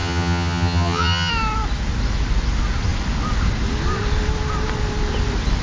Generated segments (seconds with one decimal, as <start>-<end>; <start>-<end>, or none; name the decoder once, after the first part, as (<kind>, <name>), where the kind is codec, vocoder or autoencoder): 0.0-1.3 (vocoder, HiFi-GAN)